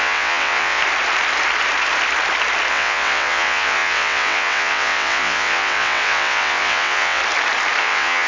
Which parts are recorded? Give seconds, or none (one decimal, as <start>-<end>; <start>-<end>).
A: 0.8-2.7; 7.2-7.8